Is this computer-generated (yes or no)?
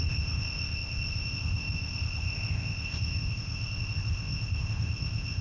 yes